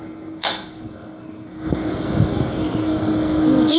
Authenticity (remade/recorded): remade